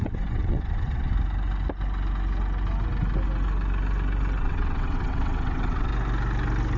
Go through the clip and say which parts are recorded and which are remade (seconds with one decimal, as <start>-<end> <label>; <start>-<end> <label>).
0.0-1.1 remade; 1.1-4.4 recorded; 4.4-5.9 remade; 5.9-6.8 recorded